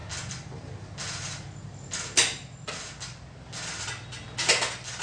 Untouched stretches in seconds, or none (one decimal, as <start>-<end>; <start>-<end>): 0.0-5.0